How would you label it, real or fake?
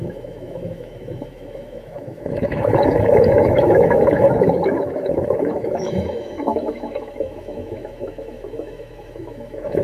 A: fake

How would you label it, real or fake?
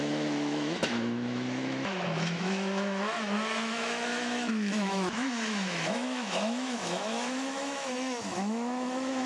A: fake